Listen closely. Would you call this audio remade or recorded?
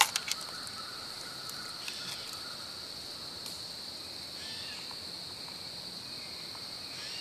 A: recorded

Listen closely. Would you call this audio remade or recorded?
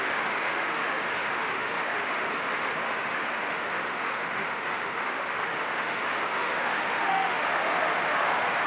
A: remade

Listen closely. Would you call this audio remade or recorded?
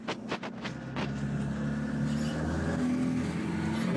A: recorded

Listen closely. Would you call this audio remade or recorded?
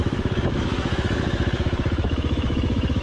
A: remade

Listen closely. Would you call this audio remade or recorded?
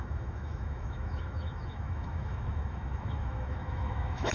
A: remade